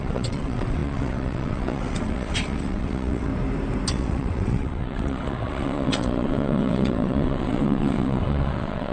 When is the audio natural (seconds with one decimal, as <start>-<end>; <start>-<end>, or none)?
3.3-3.9